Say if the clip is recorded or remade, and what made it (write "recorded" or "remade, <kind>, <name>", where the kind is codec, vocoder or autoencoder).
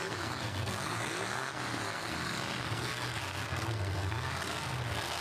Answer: remade, codec, SNAC